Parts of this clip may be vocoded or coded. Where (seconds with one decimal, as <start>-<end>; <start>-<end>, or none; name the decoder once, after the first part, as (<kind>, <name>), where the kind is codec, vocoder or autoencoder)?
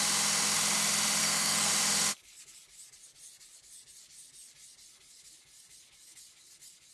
1.2-1.7 (codec, SNAC)